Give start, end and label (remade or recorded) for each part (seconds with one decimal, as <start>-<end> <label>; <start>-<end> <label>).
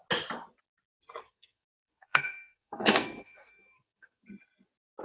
0.0-1.2 recorded; 1.2-4.2 remade; 4.2-5.0 recorded